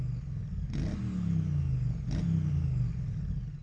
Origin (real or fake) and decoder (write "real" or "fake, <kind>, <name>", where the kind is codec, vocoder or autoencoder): real